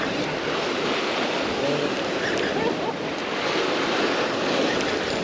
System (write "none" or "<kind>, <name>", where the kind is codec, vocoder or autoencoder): none